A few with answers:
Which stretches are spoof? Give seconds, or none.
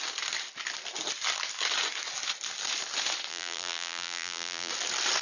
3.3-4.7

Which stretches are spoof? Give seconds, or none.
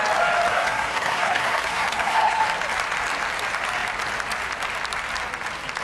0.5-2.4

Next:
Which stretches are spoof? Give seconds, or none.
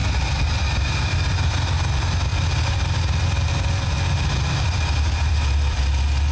0.0-1.7; 2.3-5.8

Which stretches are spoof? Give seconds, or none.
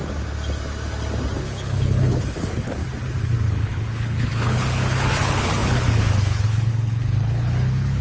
1.4-2.8; 3.5-8.0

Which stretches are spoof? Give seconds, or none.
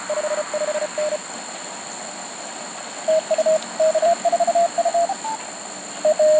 none